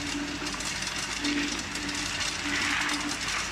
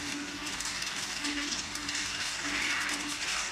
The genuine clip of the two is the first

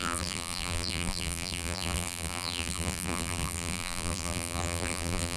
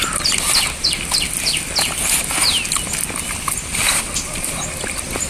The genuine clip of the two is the second